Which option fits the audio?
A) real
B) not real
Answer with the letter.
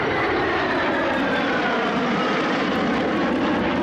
A